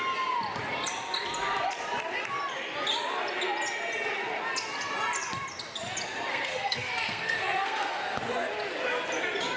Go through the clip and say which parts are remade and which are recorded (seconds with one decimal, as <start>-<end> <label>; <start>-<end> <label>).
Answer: 0.0-6.3 recorded; 6.3-8.2 remade; 8.2-9.6 recorded

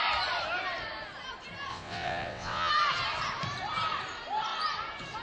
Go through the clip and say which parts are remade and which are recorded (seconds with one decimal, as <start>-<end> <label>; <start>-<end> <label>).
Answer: 0.0-1.7 recorded; 1.7-2.7 remade; 2.7-5.2 recorded

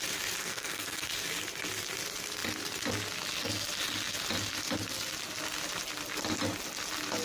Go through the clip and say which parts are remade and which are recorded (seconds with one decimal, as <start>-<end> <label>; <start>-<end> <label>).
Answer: 0.0-0.4 recorded; 0.4-1.1 remade; 1.1-7.2 recorded

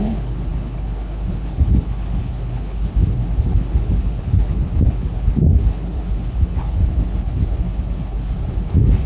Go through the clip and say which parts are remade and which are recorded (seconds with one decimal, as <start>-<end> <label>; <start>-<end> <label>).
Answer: 0.0-9.1 remade

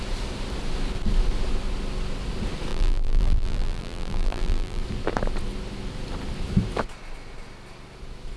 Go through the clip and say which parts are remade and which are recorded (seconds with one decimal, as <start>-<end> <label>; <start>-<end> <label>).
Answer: 0.0-2.7 recorded; 2.7-4.8 remade; 4.8-8.4 recorded

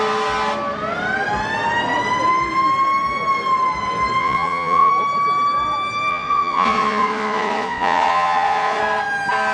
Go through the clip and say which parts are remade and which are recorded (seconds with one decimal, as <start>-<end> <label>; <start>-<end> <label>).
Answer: 0.0-4.2 recorded; 4.2-4.9 remade; 4.9-6.1 recorded; 6.1-8.8 remade; 8.8-9.5 recorded